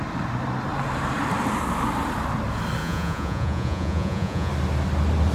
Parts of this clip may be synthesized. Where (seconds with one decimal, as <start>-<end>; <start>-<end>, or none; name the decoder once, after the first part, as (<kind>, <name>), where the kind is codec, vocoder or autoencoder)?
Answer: 2.8-4.5 (vocoder, Vocos)